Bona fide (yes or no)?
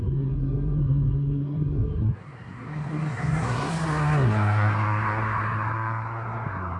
no